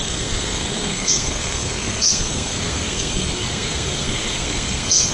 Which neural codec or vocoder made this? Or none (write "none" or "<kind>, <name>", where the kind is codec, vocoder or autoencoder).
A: codec, SNAC